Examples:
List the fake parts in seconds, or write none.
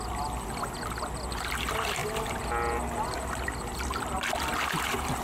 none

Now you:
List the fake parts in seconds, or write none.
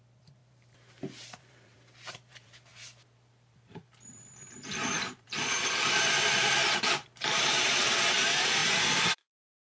0.0-9.6 (vocoder, BigVGAN v2)